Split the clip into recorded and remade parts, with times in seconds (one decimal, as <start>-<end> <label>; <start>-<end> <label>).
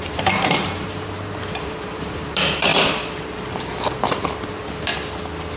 0.0-4.9 remade; 4.9-5.6 recorded